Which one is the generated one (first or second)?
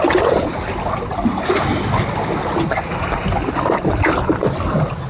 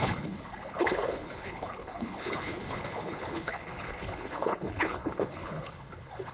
second